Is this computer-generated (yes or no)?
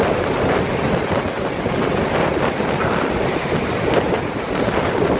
no